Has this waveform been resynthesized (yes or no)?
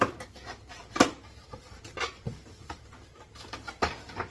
yes